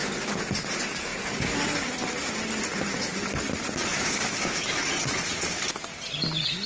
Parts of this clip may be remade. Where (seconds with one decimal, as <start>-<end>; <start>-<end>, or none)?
3.9-4.7